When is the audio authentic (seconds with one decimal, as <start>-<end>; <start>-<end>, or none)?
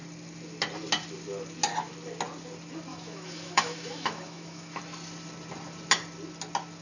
0.0-2.9; 4.8-6.8